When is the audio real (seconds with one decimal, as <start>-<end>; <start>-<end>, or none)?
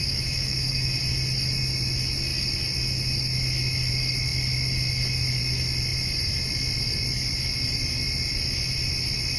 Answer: 1.0-9.4